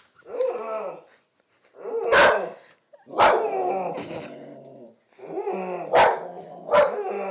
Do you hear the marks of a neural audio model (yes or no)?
no